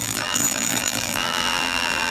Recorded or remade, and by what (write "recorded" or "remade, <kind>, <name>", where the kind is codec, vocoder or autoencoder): remade, vocoder, BigVGAN v2